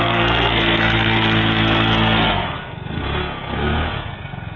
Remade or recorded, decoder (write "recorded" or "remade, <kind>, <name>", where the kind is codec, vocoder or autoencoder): remade, codec, SNAC